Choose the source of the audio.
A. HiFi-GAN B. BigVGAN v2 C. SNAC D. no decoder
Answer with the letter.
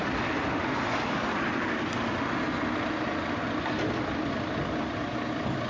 D